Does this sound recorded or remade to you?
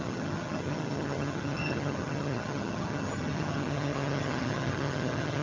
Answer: remade